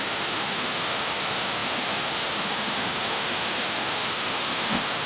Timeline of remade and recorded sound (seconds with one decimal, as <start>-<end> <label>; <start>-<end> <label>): 0.0-5.1 remade